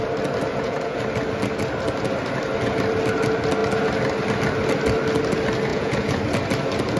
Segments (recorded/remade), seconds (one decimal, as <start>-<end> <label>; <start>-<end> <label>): 0.0-0.5 recorded; 0.5-1.0 remade; 1.0-5.7 recorded; 5.7-6.2 remade; 6.2-7.0 recorded

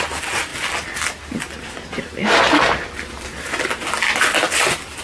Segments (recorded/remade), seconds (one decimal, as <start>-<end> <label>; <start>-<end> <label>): 0.0-5.0 recorded